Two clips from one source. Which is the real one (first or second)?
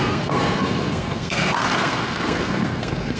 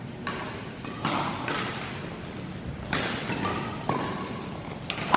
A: second